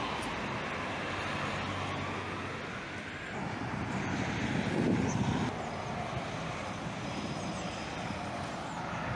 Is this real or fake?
real